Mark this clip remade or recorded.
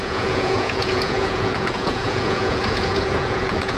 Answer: remade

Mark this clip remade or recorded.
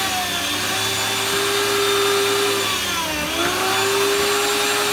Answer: recorded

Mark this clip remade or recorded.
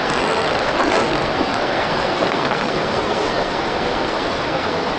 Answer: remade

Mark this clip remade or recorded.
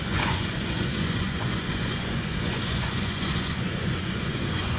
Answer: remade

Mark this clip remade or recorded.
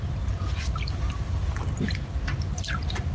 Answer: recorded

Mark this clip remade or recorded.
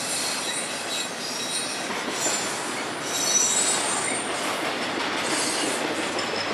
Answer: recorded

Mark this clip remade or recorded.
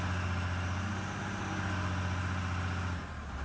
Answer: recorded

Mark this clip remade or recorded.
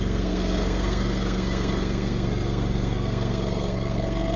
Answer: remade